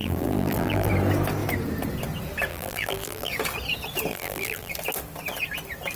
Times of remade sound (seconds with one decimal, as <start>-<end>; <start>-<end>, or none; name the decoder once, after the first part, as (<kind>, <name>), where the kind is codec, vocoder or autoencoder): 0.0-0.9 (vocoder, BigVGAN v2); 2.5-3.3; 4.1-4.7